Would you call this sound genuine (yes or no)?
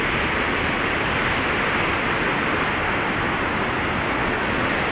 yes